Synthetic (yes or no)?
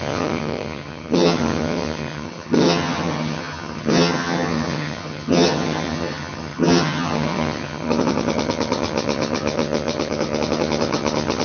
yes